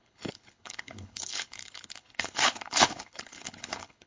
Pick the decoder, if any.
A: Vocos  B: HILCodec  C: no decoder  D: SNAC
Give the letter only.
B